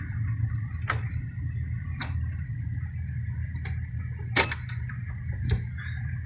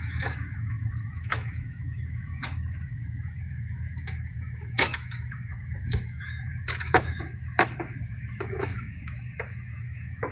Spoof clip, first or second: second